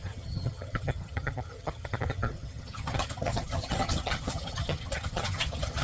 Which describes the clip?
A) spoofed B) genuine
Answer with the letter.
A